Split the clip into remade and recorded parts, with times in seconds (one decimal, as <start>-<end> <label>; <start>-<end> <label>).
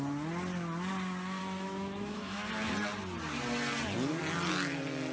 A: 0.0-1.4 recorded; 1.4-2.5 remade; 2.5-5.1 recorded